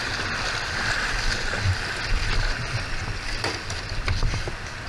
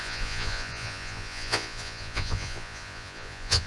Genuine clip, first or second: first